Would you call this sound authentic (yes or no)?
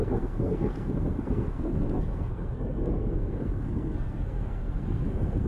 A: no